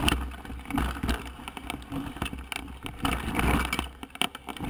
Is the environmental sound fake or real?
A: real